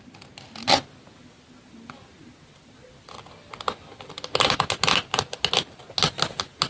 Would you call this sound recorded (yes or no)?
yes